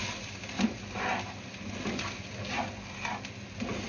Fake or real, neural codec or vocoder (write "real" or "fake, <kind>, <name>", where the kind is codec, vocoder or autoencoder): real